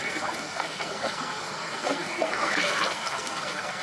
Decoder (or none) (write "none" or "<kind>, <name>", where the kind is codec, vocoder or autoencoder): codec, SNAC